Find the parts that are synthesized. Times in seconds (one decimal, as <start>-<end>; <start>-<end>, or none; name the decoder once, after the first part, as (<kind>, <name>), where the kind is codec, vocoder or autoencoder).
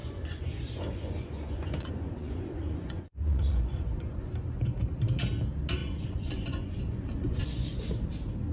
0.0-4.3 (vocoder, Vocos); 5.8-7.9